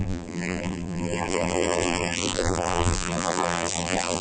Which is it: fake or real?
fake